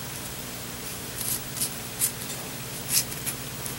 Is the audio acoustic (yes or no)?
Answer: no